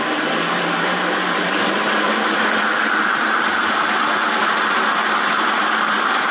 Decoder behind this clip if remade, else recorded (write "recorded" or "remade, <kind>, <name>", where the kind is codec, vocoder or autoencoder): remade, vocoder, BigVGAN v2